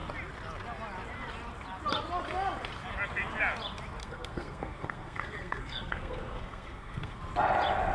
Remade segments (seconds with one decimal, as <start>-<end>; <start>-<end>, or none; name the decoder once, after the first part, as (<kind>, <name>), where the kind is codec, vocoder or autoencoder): 4.0-7.2 (codec, SNAC)